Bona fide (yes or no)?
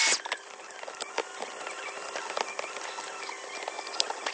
yes